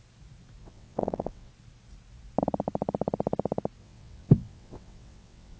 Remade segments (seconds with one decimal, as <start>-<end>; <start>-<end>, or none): 0.6-1.5; 3.8-5.6